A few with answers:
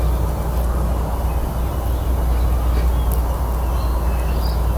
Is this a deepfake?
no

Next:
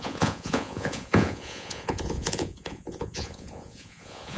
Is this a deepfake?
yes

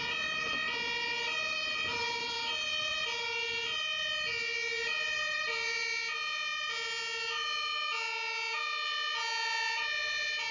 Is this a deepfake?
no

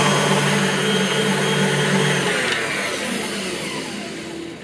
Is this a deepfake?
no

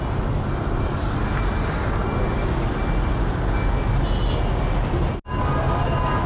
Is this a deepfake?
no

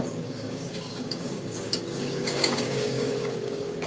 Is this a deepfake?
yes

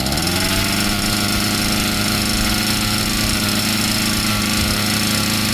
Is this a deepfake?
no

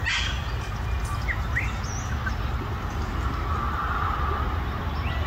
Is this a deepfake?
no